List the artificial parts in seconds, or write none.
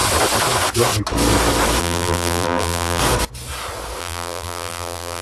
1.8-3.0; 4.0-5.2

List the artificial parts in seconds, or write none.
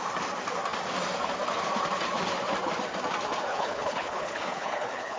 3.5-5.2